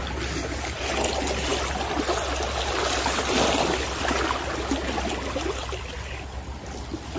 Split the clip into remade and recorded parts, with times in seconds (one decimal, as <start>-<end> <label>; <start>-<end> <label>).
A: 0.0-7.2 recorded